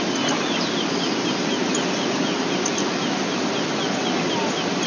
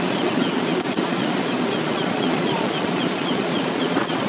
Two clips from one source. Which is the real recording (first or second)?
first